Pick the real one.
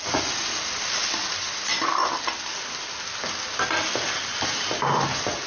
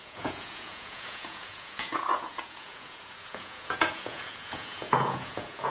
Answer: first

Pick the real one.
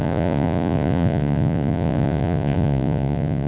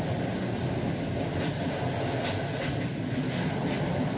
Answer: second